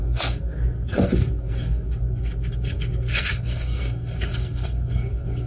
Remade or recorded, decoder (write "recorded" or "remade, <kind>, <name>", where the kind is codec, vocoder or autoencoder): remade, codec, SNAC